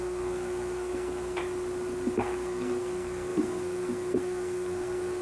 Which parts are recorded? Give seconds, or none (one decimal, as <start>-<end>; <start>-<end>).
1.4-2.2